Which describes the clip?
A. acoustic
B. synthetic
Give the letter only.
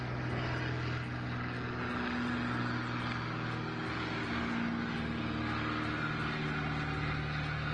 A